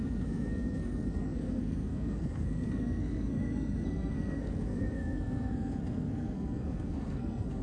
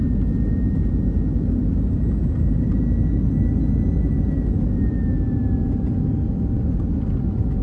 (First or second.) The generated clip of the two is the first